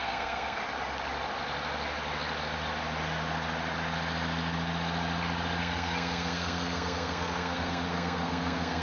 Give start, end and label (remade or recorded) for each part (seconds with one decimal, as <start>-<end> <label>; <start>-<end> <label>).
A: 0.0-0.6 remade; 0.6-5.6 recorded; 5.6-8.8 remade